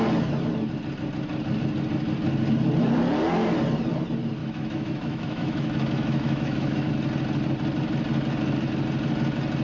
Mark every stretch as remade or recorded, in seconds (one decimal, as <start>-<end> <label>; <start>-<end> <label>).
0.0-4.4 recorded; 4.4-6.9 remade; 6.9-9.6 recorded